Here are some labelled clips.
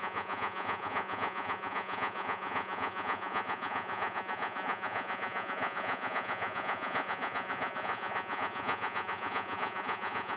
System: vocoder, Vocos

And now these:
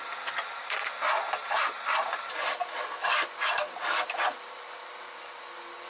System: none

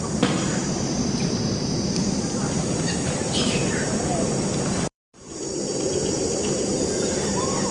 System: vocoder, BigVGAN v2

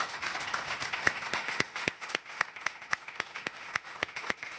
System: autoencoder, DAC-VAE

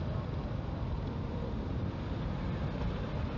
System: none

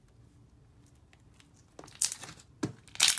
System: none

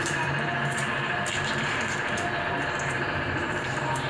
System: vocoder, BigVGAN v2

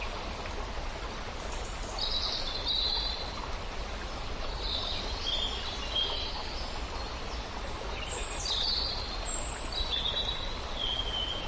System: none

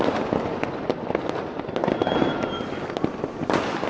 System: none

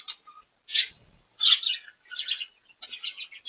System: none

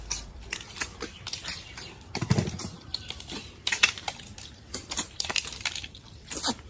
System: vocoder, BigVGAN v2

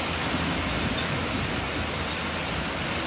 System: none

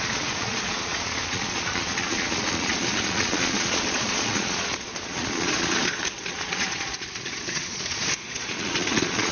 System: vocoder, Vocos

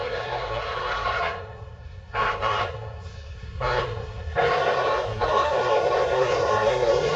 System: codec, SNAC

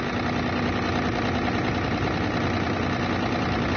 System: none